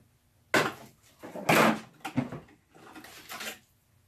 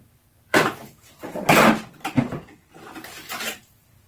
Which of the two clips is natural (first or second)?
first